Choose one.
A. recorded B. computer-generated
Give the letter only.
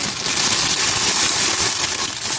A